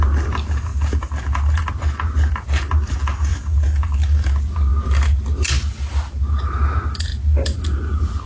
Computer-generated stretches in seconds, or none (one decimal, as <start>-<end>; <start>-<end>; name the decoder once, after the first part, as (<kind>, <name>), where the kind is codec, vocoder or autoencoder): none